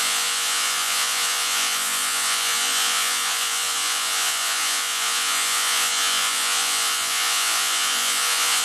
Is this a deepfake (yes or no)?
yes